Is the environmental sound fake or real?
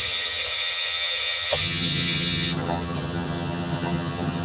fake